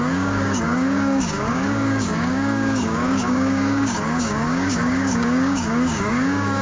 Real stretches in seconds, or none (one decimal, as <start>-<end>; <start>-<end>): none